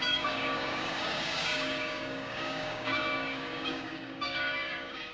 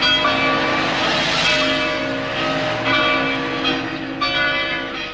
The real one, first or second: second